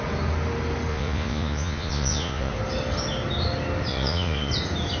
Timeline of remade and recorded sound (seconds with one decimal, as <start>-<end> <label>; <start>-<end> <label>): 0.0-0.9 recorded; 0.9-2.5 remade; 2.5-3.9 recorded; 3.9-4.5 remade; 4.5-5.0 recorded